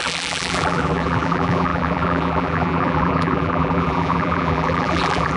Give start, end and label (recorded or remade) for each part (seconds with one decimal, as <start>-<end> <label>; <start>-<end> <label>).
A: 0.0-5.4 remade